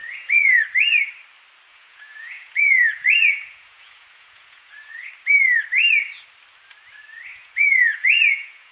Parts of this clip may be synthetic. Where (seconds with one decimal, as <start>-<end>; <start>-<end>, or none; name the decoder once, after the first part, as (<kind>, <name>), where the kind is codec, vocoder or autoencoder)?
0.0-0.6 (vocoder, Vocos); 1.7-5.1; 7.3-8.7